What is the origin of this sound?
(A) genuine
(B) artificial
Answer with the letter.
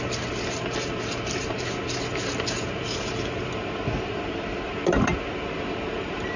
B